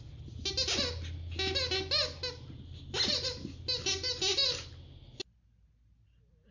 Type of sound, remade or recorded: recorded